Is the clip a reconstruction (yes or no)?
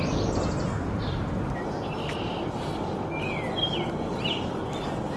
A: no